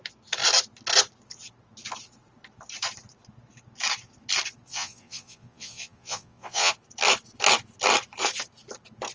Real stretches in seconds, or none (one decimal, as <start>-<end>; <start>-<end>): 0.0-4.7; 6.7-9.1